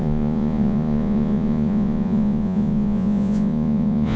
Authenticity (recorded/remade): remade